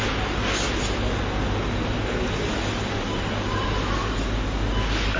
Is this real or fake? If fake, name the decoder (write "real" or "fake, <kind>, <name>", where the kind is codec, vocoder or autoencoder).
real